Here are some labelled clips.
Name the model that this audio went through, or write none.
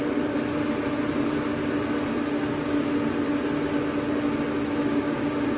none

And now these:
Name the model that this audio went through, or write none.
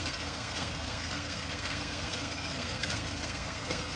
codec, SNAC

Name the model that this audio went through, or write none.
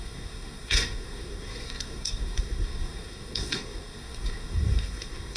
codec, SNAC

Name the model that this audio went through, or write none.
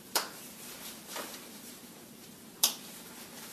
vocoder, BigVGAN v2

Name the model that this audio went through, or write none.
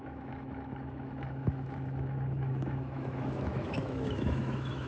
autoencoder, DAC-VAE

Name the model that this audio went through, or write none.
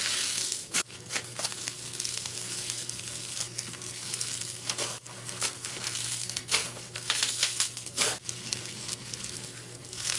codec, SNAC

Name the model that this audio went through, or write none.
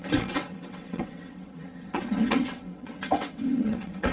vocoder, WaveNeXt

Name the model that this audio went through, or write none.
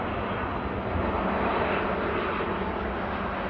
none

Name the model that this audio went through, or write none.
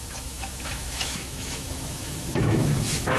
autoencoder, DAC-VAE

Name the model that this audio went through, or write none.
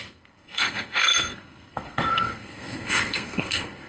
codec, SNAC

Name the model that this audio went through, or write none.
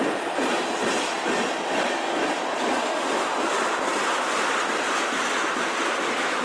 vocoder, BigVGAN v2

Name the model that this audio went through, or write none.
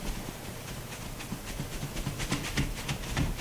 none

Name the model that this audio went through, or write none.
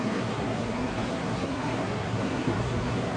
codec, SNAC